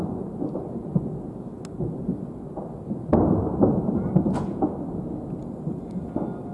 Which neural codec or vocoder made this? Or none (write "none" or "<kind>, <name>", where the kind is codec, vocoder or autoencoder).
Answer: none